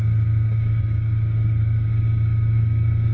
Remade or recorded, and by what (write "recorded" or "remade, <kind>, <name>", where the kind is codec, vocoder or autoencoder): remade, codec, DAC